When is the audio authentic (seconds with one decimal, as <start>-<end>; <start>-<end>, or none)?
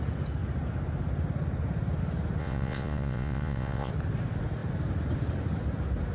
0.0-2.4; 3.9-6.1